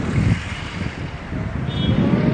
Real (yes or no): yes